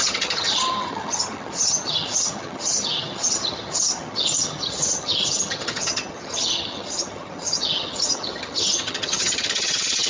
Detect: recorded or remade remade